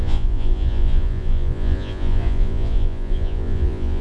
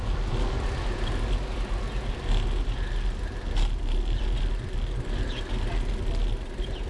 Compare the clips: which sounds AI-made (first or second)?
first